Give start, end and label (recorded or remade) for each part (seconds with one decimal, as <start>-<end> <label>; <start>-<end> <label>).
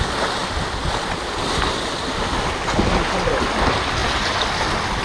0.0-5.0 recorded